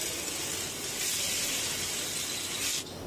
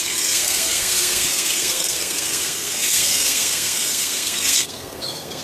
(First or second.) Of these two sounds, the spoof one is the second